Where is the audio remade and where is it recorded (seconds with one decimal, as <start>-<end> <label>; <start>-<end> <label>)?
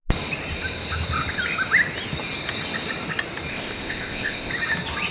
0.0-3.5 recorded; 3.5-4.5 remade; 4.5-5.1 recorded